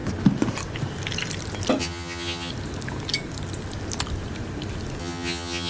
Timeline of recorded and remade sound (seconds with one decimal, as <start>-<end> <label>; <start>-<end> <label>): 0.0-1.8 recorded; 1.8-2.5 remade; 2.5-5.0 recorded; 5.0-5.7 remade